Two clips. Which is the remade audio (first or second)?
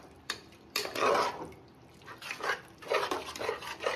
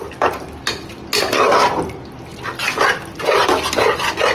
first